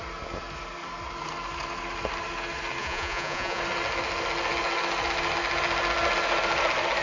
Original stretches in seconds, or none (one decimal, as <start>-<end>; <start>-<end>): 0.0-2.8; 3.6-7.0